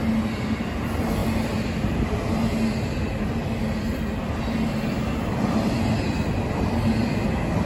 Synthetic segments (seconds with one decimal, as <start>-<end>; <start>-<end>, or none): none

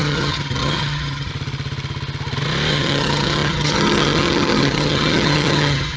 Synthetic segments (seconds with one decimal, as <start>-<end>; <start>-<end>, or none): 0.0-1.3; 2.7-6.0